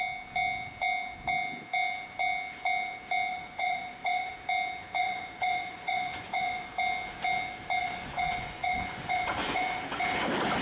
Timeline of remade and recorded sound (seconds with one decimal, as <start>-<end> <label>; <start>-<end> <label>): 0.0-3.3 recorded; 3.3-4.3 remade; 4.3-5.0 recorded; 5.0-6.7 remade; 6.7-7.8 recorded; 7.8-9.8 remade; 9.8-10.6 recorded